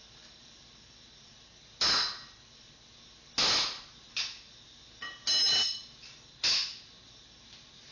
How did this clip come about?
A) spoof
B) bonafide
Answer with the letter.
B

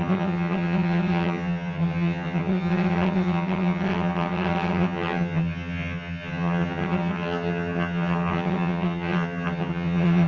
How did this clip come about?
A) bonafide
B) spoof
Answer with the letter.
B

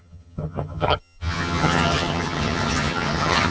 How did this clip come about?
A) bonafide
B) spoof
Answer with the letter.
B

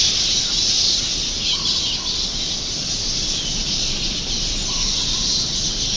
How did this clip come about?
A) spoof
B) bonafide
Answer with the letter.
B